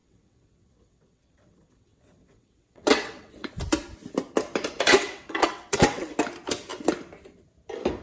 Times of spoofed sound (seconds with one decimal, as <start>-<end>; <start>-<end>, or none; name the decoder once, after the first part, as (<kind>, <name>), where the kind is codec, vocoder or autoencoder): 0.0-3.5 (vocoder, WaveNeXt); 4.9-6.2